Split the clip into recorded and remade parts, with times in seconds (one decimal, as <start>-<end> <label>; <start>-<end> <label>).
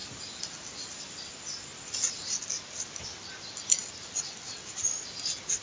0.0-5.6 recorded